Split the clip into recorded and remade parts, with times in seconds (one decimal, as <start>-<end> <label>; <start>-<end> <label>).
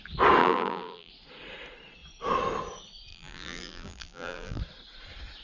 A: 0.0-0.4 recorded; 0.4-1.1 remade; 1.1-3.1 recorded; 3.1-4.6 remade; 4.6-5.4 recorded